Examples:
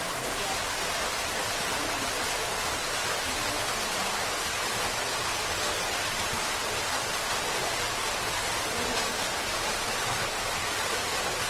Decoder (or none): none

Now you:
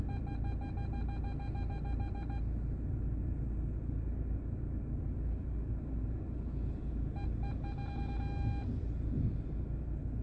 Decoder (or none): none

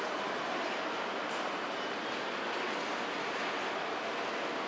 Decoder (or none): none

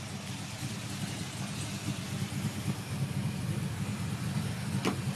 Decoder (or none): none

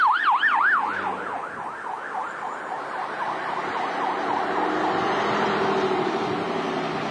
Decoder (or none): none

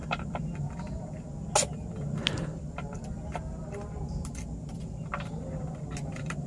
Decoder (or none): none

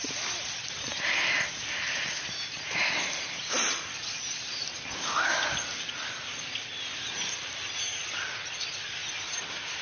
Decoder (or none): none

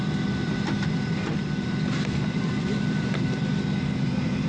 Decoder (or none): vocoder, BigVGAN v2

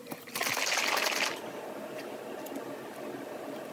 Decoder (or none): none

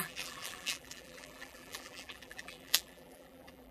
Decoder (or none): vocoder, BigVGAN v2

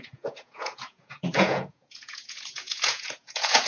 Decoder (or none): vocoder, Vocos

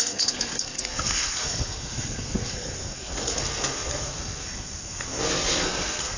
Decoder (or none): codec, SNAC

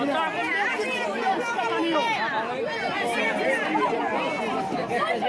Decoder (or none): none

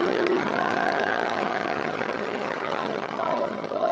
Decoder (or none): vocoder, HiFi-GAN